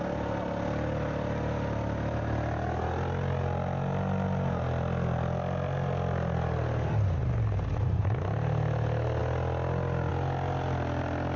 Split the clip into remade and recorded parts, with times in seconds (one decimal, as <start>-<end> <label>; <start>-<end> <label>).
0.0-11.4 recorded

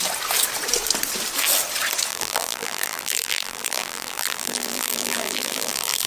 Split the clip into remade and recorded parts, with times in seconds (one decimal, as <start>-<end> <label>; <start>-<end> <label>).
0.0-2.1 recorded; 2.1-6.1 remade

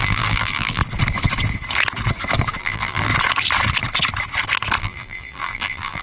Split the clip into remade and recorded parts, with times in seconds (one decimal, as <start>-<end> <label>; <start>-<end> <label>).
0.0-0.8 remade; 0.8-2.6 recorded; 2.6-3.1 remade; 3.1-4.8 recorded; 4.8-6.0 remade

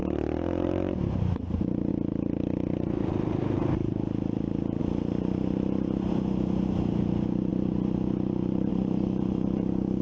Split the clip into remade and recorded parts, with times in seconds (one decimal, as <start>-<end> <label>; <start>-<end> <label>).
0.0-1.9 remade; 1.9-4.8 recorded; 4.8-10.0 remade

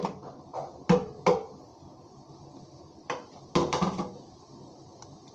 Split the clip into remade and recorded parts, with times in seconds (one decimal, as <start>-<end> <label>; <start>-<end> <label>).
0.0-5.3 recorded

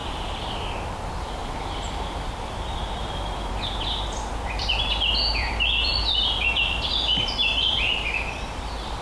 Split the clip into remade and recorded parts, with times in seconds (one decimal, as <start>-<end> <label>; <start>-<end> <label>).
0.0-9.0 remade